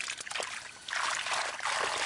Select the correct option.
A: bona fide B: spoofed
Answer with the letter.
A